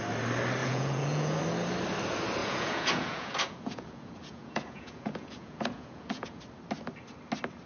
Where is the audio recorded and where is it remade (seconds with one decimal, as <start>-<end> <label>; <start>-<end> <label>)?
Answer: 0.0-0.6 recorded; 0.6-1.4 remade; 1.4-2.4 recorded; 2.4-6.4 remade; 6.4-7.7 recorded